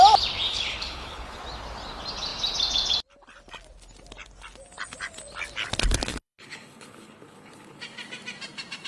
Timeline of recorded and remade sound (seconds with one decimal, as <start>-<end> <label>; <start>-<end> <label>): 0.0-0.5 recorded; 0.5-1.4 remade; 1.4-6.1 recorded; 6.1-7.8 remade; 7.8-8.9 recorded